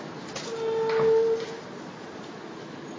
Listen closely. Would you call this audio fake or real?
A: real